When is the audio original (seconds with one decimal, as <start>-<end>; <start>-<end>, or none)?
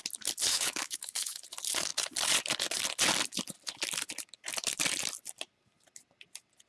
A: 0.0-0.5; 1.4-6.7